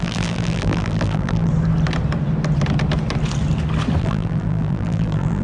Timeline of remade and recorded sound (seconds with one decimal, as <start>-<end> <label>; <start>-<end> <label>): 0.0-1.5 remade; 1.5-4.0 recorded; 4.0-5.4 remade